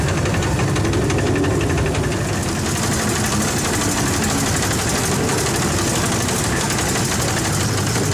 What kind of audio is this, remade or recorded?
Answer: recorded